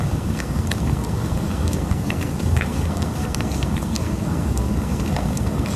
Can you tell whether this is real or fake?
fake